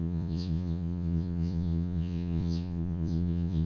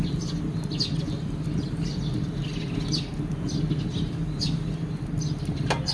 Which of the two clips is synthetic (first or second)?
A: first